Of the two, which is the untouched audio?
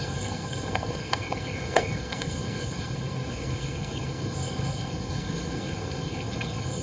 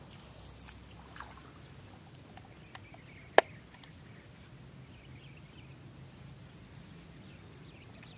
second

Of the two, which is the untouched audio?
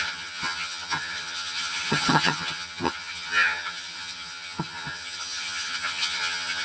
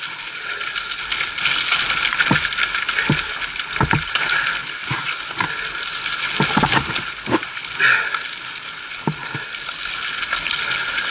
second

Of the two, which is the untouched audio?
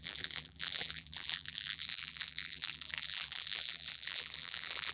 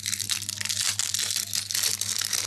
second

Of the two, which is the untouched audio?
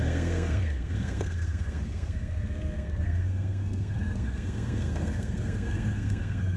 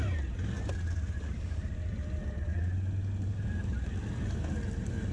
second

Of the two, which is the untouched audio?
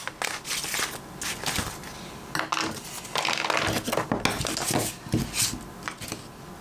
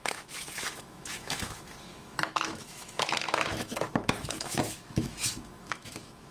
first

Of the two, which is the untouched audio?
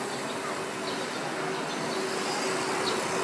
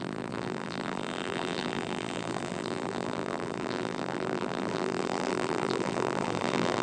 first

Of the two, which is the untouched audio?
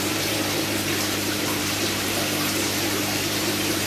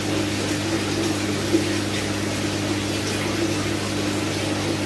second